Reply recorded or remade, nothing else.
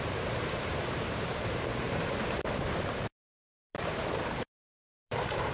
remade